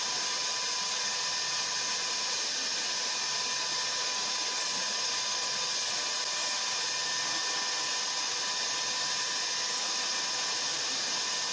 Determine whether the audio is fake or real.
real